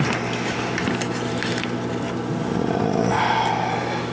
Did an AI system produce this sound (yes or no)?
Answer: no